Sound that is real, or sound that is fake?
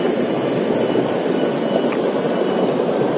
real